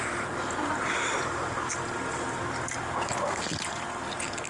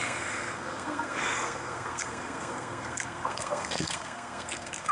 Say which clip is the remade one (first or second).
second